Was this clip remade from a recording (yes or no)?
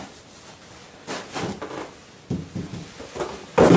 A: no